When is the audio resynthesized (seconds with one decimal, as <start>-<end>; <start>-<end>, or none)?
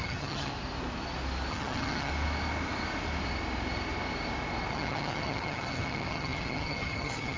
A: 0.0-0.5; 1.5-2.1; 4.7-7.4